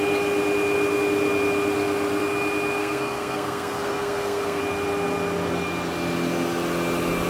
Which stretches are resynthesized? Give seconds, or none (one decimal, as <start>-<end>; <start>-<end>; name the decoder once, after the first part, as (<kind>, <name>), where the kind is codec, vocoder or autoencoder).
2.8-4.6 (codec, SNAC)